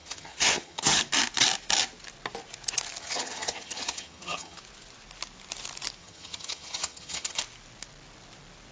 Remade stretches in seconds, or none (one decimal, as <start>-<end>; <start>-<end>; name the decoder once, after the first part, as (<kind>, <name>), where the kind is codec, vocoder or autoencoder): 0.0-1.0 (vocoder, HiFi-GAN); 3.0-4.6; 6.0-7.4